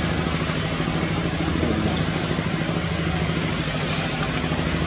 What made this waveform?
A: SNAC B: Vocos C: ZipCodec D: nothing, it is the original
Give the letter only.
D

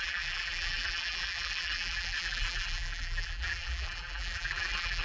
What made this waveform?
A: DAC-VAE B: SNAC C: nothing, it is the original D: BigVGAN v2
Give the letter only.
D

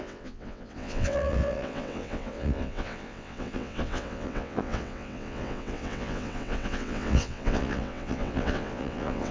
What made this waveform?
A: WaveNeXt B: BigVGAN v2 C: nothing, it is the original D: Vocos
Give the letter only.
A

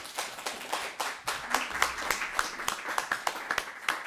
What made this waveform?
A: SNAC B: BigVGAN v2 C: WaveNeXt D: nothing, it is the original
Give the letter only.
D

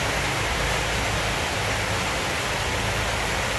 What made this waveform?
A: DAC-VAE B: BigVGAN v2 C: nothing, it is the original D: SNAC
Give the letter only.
B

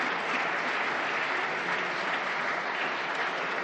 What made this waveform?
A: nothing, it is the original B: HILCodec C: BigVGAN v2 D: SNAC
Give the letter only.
A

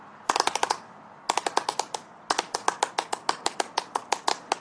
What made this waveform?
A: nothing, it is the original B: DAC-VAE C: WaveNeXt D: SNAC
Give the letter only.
A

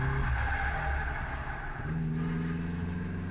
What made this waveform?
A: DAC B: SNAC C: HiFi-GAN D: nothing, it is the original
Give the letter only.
D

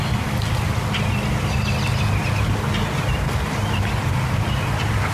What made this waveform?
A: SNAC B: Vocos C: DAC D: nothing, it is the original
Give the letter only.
D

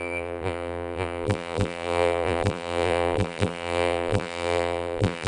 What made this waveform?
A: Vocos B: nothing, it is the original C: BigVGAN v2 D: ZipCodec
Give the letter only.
C